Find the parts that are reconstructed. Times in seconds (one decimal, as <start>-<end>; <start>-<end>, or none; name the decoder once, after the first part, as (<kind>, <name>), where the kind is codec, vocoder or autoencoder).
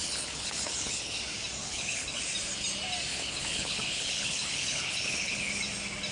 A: 0.0-1.2 (codec, HILCodec); 1.6-2.2; 3.1-5.5